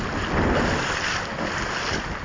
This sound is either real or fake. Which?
real